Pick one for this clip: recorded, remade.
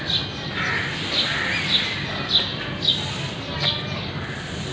recorded